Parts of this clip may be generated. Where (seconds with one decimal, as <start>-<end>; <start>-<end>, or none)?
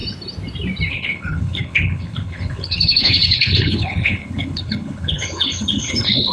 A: 0.9-6.3